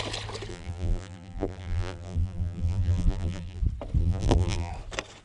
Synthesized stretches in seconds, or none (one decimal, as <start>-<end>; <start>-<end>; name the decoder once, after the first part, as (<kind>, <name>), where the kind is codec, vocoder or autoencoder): 0.5-3.6 (vocoder, BigVGAN v2); 4.0-4.7